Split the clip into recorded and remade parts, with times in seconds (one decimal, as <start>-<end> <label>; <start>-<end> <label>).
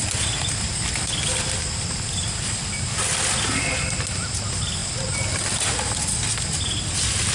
0.0-4.8 recorded; 4.8-5.7 remade; 5.7-7.3 recorded